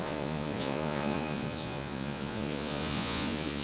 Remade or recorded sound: remade